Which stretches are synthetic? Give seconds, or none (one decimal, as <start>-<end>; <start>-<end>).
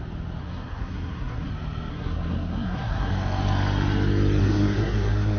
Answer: 0.4-1.5; 1.9-3.1; 4.4-5.4